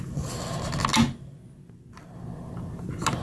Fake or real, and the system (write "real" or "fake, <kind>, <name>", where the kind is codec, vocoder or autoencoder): real